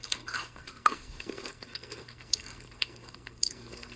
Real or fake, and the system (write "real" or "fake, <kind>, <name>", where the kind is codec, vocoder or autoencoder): fake, codec, SNAC